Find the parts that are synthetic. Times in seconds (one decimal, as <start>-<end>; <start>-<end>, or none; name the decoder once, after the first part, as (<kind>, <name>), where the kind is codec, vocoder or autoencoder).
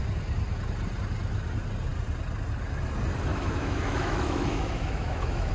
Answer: 3.3-5.5 (autoencoder, DAC-VAE)